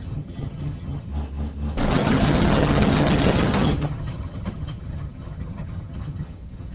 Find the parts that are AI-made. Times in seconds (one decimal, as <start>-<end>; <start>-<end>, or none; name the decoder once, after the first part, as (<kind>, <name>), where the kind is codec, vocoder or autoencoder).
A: 0.0-1.1 (vocoder, HiFi-GAN); 1.9-6.7